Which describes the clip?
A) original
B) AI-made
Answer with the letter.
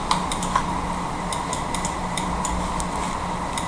A